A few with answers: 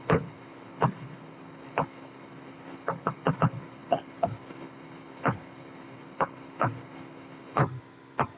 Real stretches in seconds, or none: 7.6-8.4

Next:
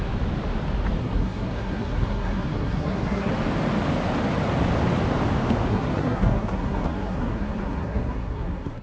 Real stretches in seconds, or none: 0.0-1.0; 3.3-5.7

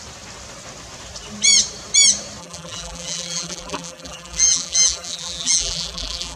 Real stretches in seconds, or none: 0.0-2.4

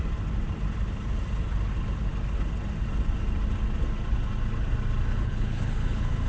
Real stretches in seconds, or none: 0.0-5.1

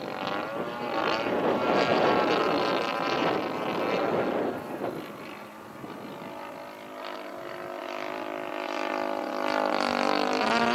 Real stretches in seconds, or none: 0.0-10.7

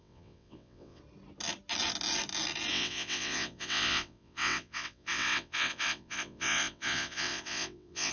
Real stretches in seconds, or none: 1.0-2.7